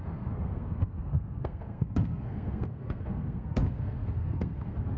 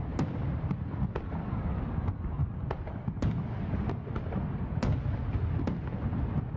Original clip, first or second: second